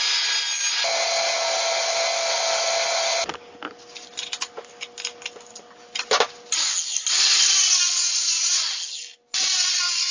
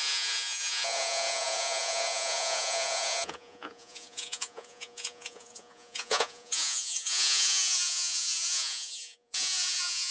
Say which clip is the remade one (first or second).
second